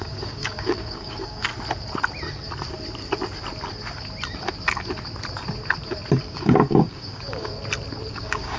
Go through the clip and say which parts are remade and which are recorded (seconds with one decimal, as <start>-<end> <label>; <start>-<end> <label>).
0.0-1.5 remade; 1.5-6.2 recorded; 6.2-7.5 remade; 7.5-8.1 recorded; 8.1-8.6 remade